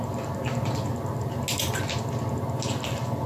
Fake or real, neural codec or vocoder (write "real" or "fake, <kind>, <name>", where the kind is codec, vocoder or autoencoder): real